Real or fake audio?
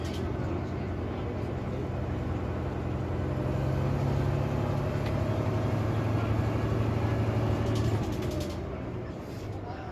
real